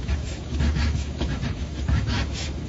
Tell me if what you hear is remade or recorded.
remade